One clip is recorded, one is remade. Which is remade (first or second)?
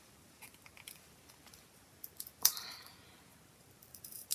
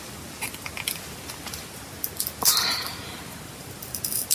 first